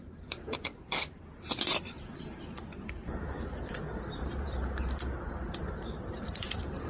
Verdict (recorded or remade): remade